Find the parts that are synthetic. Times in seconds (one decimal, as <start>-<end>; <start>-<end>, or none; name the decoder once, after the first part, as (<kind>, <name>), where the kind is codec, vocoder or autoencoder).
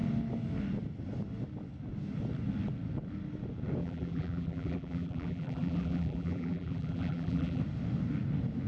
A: 3.8-7.6 (vocoder, BigVGAN v2)